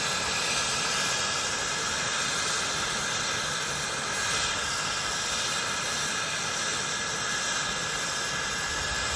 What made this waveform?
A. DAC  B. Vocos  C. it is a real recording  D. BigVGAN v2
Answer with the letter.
C